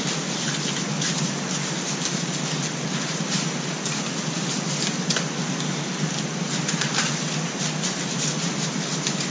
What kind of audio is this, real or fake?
real